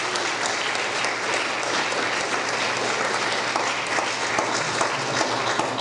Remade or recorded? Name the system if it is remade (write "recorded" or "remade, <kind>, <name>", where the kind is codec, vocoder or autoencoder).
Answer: recorded